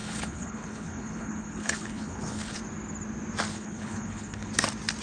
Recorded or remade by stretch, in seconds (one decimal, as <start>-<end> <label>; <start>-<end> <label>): 0.0-2.6 remade; 2.6-3.5 recorded; 3.5-4.5 remade; 4.5-5.0 recorded